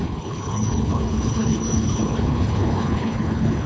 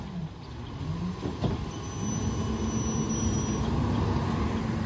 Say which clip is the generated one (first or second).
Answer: first